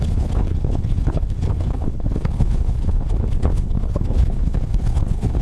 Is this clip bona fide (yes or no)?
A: no